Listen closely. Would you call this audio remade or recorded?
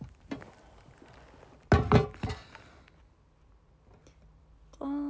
recorded